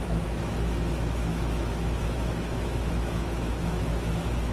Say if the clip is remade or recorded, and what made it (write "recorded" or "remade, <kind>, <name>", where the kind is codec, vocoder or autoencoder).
remade, autoencoder, DAC-VAE